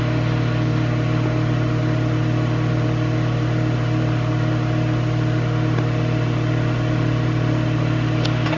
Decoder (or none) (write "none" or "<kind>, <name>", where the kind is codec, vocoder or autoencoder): none